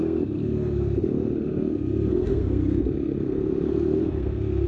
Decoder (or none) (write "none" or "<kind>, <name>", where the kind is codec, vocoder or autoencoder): codec, SNAC